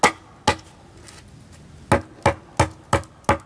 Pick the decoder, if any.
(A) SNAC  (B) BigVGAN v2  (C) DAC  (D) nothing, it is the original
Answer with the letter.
D